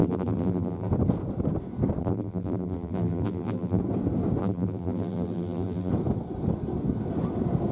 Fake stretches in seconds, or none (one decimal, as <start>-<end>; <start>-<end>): 0.0-0.9; 2.0-3.8; 4.4-5.9